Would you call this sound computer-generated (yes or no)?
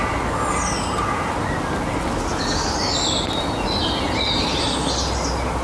no